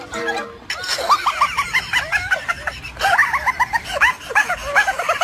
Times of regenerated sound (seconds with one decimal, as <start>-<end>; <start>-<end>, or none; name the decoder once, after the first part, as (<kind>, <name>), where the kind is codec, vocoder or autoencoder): 3.2-4.3 (vocoder, BigVGAN v2)